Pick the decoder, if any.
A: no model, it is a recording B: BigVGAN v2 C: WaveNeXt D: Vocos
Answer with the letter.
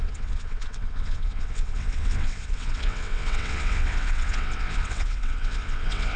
C